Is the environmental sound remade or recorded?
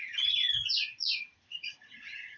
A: remade